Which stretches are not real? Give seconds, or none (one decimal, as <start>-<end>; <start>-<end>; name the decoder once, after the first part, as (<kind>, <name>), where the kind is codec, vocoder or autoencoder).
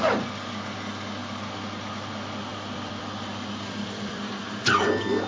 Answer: 2.5-4.3 (vocoder, BigVGAN v2)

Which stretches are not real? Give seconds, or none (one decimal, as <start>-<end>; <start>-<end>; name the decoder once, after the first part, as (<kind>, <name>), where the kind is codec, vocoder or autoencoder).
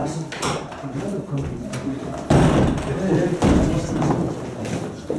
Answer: 0.0-1.2 (vocoder, BigVGAN v2)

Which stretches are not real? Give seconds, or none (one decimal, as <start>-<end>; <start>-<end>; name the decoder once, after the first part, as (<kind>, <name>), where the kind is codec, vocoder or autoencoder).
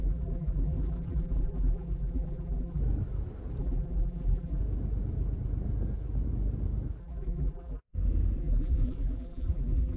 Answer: 0.0-2.8 (vocoder, BigVGAN v2); 3.6-4.6; 7.0-7.9; 8.4-10.0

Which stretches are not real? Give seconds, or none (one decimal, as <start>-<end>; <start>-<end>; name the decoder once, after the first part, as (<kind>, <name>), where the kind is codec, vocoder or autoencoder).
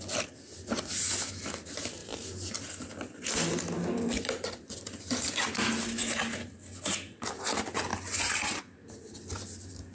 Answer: 2.0-5.5 (vocoder, BigVGAN v2)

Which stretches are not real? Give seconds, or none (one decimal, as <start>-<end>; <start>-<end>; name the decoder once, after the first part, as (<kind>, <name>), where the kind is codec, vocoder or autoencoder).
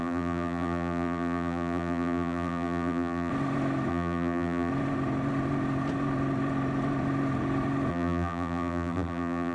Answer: 0.0-3.3 (vocoder, BigVGAN v2); 3.9-4.7; 7.9-9.5